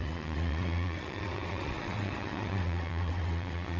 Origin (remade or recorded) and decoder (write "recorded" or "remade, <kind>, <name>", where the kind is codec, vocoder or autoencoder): remade, vocoder, WaveNeXt